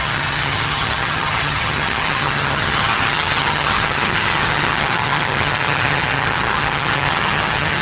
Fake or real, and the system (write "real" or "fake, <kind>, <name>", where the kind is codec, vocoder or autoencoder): fake, vocoder, HiFi-GAN